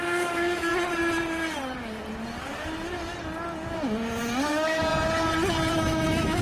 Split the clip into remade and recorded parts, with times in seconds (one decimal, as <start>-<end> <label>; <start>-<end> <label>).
0.0-0.7 remade; 0.7-4.5 recorded; 4.5-4.9 remade; 4.9-5.7 recorded; 5.7-6.4 remade